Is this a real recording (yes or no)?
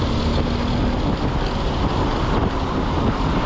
yes